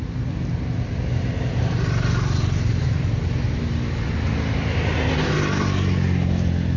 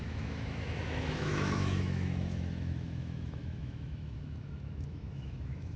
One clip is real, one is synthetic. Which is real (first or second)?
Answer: first